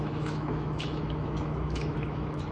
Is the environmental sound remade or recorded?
remade